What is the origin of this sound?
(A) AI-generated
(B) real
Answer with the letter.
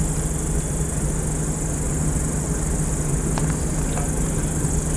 B